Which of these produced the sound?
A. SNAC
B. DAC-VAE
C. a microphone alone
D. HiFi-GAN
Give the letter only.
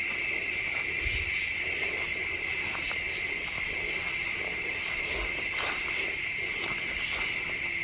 C